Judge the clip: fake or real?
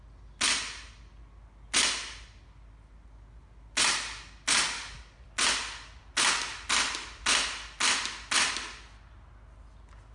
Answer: real